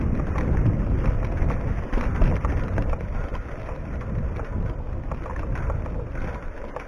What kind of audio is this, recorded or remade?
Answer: recorded